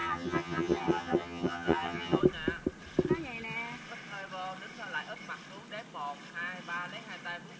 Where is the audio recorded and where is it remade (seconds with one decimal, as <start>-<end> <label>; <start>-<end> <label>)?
0.0-2.2 remade; 2.2-7.6 recorded